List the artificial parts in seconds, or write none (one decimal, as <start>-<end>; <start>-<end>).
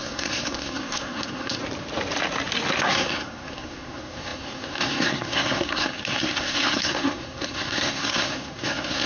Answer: 0.0-1.6; 2.8-9.1